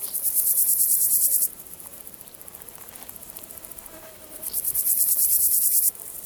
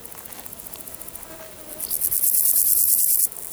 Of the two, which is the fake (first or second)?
first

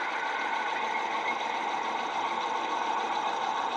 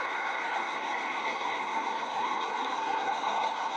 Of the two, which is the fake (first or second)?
second